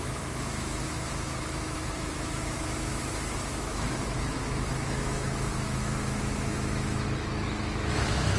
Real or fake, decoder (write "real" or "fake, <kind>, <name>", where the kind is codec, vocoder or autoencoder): fake, autoencoder, DAC-VAE